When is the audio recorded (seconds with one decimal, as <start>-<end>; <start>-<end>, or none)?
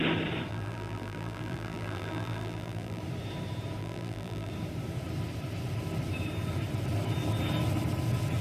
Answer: 0.0-0.5; 3.0-3.8; 4.5-8.4